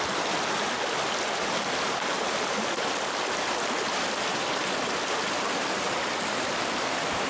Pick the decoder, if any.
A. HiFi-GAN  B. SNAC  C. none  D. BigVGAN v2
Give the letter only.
C